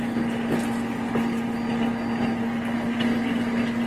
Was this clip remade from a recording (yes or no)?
no